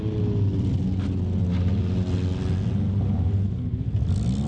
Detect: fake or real real